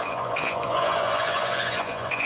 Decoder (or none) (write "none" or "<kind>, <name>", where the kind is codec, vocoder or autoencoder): vocoder, Vocos